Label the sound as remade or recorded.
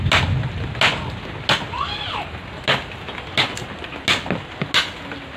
recorded